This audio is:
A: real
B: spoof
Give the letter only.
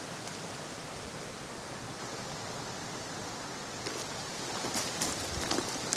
A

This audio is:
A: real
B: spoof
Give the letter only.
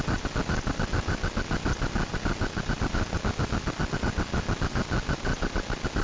A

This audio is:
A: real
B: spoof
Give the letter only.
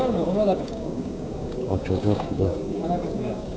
B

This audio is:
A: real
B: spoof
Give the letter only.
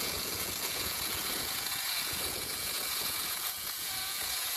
B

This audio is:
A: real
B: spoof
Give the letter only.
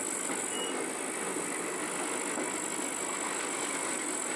A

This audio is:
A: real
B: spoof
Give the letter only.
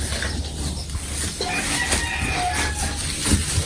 A